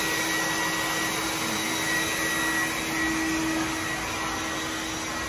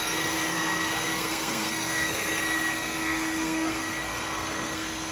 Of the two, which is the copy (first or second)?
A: second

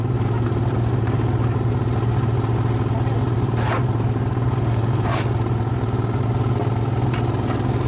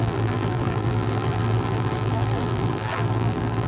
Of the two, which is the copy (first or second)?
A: second